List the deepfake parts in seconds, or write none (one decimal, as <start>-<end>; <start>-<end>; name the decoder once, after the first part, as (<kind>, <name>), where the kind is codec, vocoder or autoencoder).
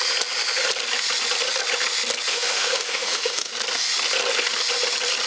2.3-3.5 (autoencoder, DAC-VAE)